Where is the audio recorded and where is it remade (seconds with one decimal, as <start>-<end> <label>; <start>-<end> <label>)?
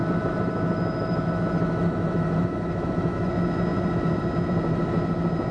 0.0-3.3 remade; 3.3-5.5 recorded